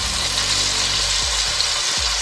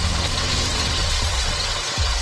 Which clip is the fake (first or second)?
second